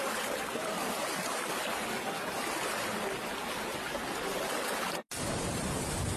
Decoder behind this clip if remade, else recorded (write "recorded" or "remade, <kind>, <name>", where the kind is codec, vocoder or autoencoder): recorded